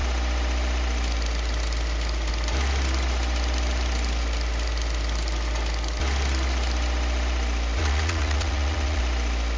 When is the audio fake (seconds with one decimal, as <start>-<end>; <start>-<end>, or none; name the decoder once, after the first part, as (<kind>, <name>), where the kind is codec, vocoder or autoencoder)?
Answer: 7.8-9.0 (vocoder, Vocos)